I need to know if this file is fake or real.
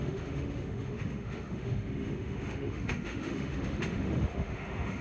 fake